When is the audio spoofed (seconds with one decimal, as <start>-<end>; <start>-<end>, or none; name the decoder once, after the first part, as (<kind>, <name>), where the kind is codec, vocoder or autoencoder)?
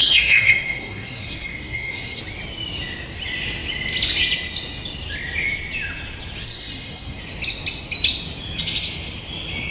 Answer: 0.0-2.2 (codec, SNAC); 6.4-7.2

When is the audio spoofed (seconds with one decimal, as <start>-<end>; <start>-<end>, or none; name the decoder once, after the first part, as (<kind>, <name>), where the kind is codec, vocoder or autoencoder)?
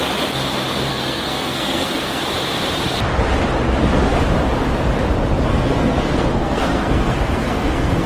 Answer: 0.9-2.2 (codec, SNAC); 5.5-8.1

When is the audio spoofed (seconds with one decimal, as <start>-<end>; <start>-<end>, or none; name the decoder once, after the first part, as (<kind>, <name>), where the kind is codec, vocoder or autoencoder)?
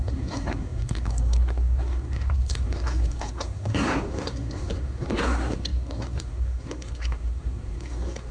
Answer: 0.0-8.3 (codec, SNAC)